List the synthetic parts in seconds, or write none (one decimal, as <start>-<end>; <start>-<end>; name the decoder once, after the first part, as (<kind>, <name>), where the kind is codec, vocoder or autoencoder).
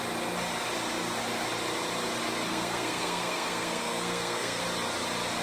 2.5-4.6 (codec, SNAC)